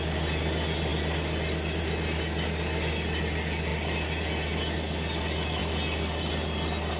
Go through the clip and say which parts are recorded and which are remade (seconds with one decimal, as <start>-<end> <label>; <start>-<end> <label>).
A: 0.0-7.0 recorded